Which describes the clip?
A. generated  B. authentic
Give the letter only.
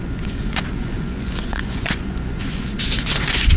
A